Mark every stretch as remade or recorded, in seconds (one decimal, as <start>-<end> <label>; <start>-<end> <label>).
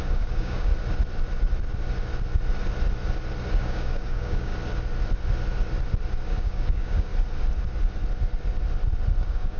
0.0-0.7 remade; 0.7-3.6 recorded; 3.6-4.5 remade; 4.5-6.3 recorded; 6.3-7.1 remade; 7.1-9.2 recorded; 9.2-9.6 remade